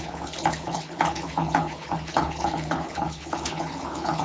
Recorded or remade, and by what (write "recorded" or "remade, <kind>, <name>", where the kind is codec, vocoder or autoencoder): remade, codec, HILCodec